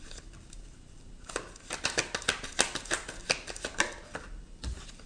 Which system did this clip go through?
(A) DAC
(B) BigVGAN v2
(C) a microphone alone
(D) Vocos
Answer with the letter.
C